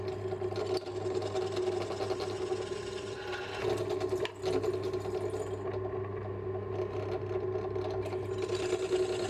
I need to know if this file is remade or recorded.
recorded